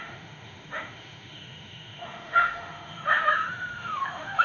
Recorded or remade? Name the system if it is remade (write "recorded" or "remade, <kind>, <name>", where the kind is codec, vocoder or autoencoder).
remade, autoencoder, DAC-VAE